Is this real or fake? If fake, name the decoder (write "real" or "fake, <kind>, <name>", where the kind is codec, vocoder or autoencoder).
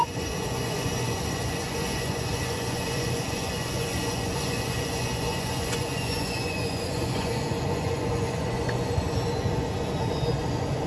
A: fake, vocoder, Vocos